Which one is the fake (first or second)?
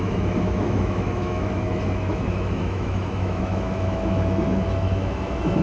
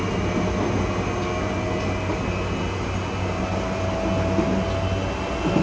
first